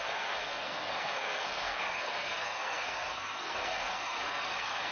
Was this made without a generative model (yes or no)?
no